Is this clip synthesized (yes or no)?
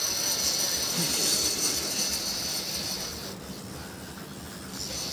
no